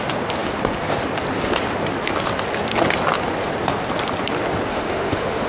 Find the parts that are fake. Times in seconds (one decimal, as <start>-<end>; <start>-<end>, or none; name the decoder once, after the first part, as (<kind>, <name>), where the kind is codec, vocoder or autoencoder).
4.7-5.5 (autoencoder, DAC-VAE)